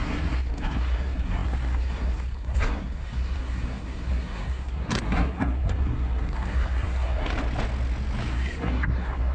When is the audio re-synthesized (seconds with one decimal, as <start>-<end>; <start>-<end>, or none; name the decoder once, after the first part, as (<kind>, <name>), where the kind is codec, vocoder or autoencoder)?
0.0-7.3 (codec, SNAC); 8.3-9.3